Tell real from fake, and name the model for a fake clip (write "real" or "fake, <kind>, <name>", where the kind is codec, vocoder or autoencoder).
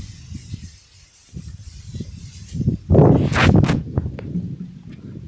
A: real